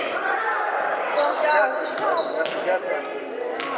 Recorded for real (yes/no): yes